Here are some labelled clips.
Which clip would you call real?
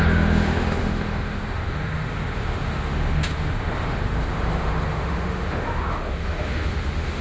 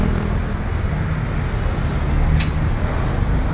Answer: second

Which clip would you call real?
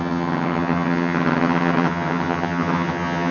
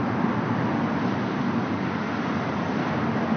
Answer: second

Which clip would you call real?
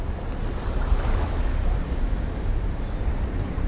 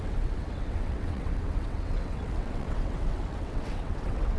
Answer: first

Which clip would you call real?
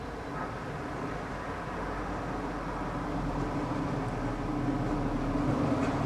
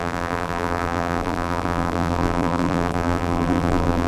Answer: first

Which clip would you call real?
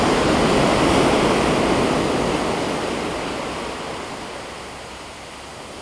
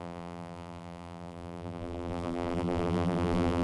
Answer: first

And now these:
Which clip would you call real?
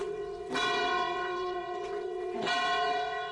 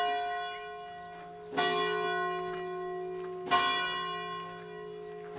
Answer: second